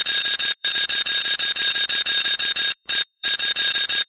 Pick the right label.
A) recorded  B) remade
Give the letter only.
B